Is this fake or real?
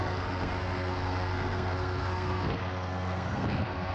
fake